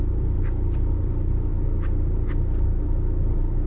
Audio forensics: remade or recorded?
recorded